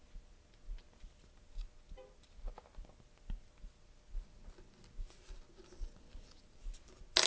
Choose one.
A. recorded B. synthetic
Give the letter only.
A